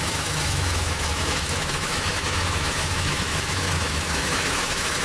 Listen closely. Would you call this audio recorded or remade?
remade